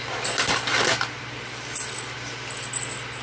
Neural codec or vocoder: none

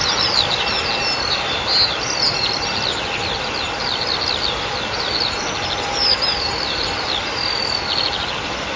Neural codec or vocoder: none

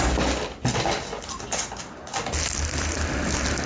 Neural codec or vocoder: none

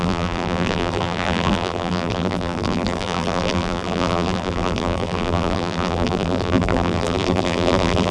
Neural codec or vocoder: vocoder, BigVGAN v2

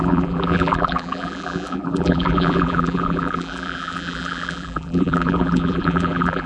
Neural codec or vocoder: vocoder, BigVGAN v2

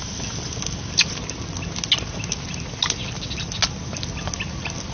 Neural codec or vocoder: none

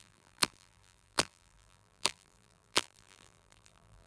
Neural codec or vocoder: vocoder, BigVGAN v2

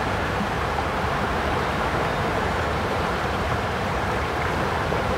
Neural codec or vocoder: vocoder, BigVGAN v2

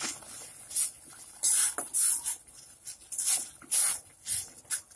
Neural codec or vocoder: none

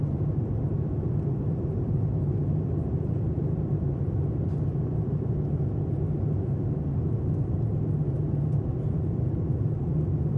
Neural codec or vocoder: vocoder, BigVGAN v2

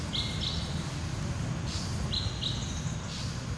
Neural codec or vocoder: none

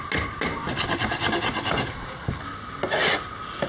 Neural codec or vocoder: none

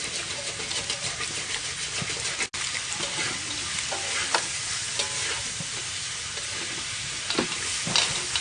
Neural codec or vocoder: none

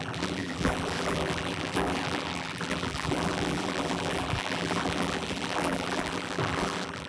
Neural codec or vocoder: vocoder, BigVGAN v2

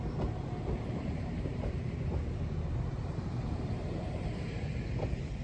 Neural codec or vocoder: vocoder, BigVGAN v2